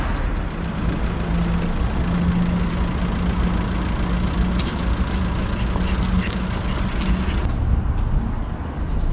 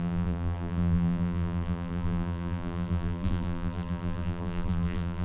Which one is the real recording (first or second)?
first